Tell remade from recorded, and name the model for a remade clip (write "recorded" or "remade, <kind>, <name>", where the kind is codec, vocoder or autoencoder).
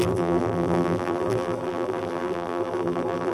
remade, vocoder, BigVGAN v2